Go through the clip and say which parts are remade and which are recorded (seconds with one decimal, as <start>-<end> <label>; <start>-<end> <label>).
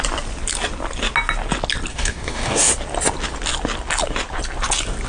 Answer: 0.0-1.9 recorded; 1.9-2.7 remade; 2.7-5.1 recorded